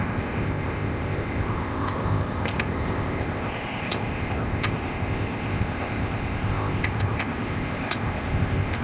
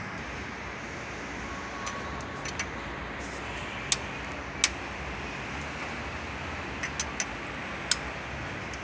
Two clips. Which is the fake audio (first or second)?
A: first